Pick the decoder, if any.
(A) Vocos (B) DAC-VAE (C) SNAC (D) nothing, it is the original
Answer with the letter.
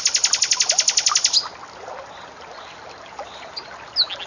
D